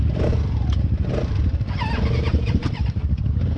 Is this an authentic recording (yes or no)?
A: no